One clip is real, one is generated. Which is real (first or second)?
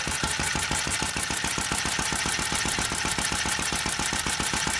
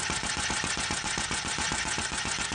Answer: first